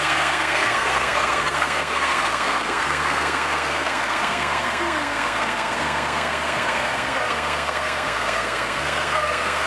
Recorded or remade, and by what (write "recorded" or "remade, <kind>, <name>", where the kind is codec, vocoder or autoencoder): remade, codec, SNAC